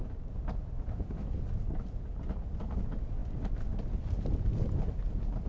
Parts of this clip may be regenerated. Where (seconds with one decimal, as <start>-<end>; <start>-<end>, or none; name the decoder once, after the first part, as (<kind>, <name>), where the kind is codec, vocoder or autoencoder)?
none